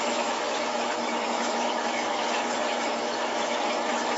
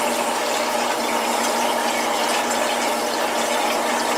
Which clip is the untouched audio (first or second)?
second